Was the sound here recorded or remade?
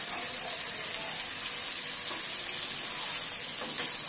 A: recorded